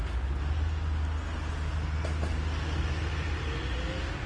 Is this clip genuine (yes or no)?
yes